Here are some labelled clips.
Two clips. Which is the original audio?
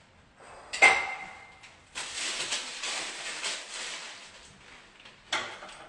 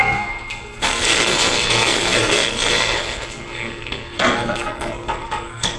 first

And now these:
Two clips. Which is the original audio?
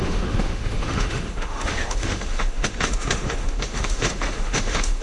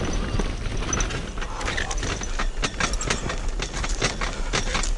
second